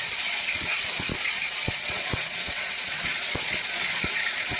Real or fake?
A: fake